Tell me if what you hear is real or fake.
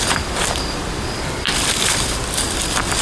fake